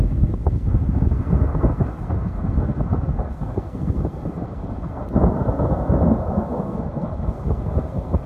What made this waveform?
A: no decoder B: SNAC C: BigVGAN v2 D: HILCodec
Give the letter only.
B